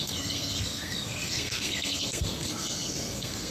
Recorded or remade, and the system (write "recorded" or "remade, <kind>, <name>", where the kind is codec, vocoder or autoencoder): remade, codec, SNAC